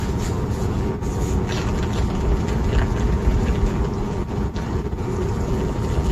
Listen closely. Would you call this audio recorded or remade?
remade